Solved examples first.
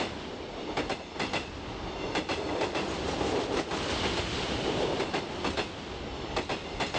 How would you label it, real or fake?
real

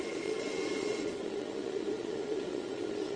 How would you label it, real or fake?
fake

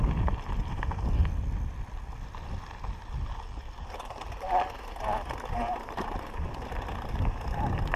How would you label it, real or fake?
real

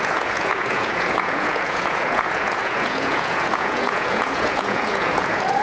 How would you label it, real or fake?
fake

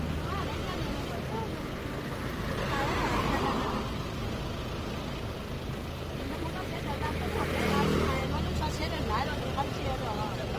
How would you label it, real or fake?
real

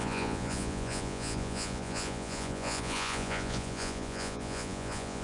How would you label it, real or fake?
fake